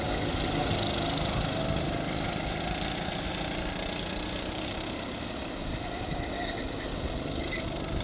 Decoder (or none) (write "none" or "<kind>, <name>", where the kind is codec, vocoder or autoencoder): none